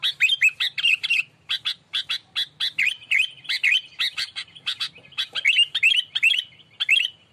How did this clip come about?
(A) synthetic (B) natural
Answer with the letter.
B